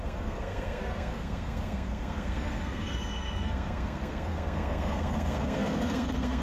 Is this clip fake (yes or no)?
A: yes